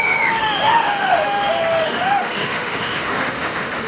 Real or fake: fake